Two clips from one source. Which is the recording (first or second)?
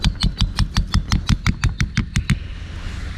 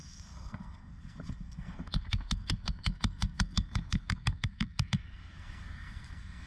first